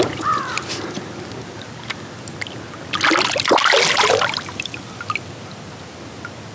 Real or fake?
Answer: real